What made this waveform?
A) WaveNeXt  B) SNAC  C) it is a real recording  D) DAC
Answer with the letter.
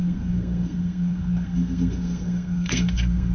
B